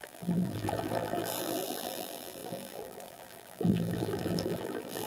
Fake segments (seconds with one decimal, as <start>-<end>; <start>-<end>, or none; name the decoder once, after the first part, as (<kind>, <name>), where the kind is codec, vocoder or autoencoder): 0.0-5.1 (vocoder, BigVGAN v2)